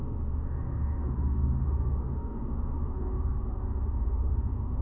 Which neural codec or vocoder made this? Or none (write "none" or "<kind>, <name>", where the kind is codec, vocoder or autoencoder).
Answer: autoencoder, DAC-VAE